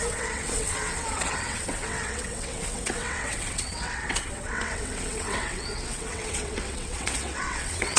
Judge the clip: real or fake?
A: fake